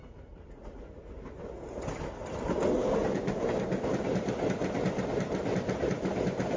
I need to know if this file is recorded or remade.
recorded